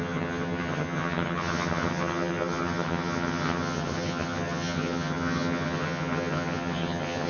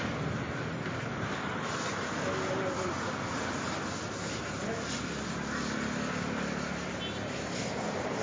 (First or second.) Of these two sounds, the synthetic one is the first